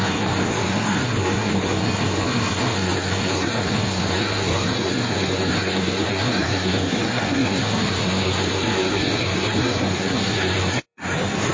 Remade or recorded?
remade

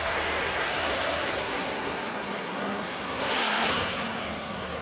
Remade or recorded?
remade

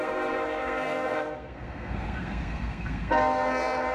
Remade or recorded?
remade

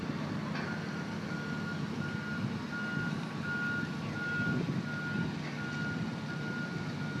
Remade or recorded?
recorded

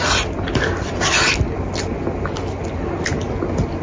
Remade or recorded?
recorded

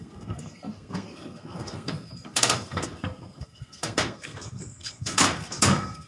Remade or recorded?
remade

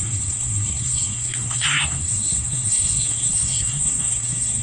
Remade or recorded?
remade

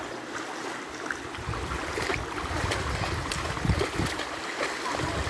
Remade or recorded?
recorded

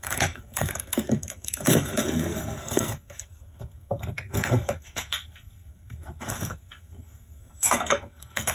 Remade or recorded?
remade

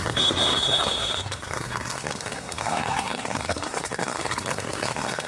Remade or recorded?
remade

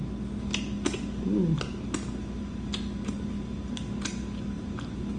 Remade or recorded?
recorded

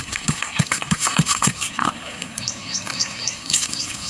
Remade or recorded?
remade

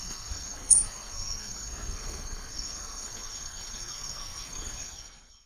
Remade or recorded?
remade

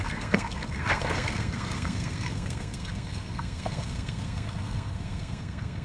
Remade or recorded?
remade